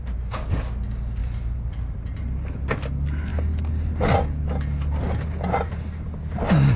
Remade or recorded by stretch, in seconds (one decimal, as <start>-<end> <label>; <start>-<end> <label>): 0.0-1.2 recorded; 1.2-2.2 remade; 2.2-6.8 recorded